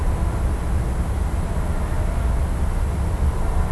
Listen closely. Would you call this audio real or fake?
real